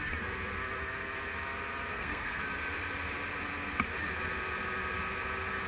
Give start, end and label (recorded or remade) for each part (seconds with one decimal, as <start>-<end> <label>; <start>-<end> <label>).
0.0-1.9 recorded; 1.9-2.4 remade; 2.4-5.7 recorded